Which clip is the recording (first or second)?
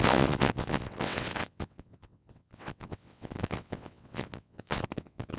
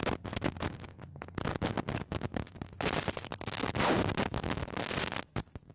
second